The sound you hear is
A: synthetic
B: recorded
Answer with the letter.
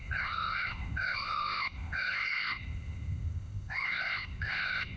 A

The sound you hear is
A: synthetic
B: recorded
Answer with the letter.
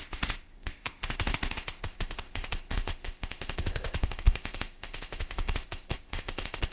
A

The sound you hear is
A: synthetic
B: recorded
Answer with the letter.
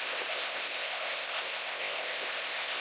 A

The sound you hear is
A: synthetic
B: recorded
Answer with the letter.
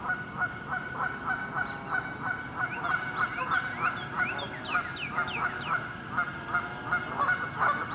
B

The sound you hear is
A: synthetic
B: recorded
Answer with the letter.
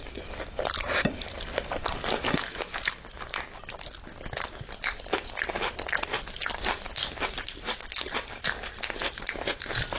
B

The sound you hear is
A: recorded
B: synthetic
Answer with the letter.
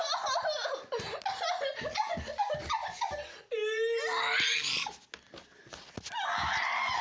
A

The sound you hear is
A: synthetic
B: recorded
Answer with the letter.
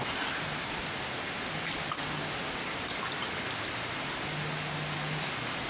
B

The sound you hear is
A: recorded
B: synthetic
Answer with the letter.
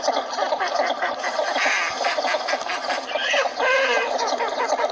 A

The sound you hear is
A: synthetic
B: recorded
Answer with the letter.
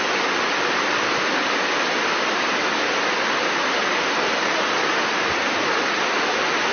B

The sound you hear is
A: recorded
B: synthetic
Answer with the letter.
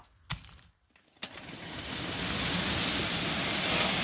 A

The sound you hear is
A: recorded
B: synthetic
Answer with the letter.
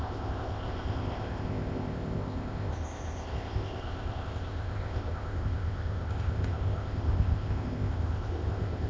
B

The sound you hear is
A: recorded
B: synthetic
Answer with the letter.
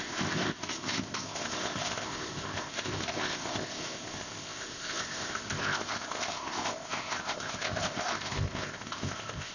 B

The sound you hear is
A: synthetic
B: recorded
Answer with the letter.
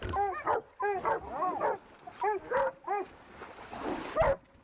B